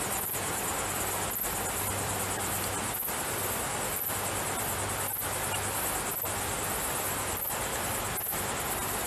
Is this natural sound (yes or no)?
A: yes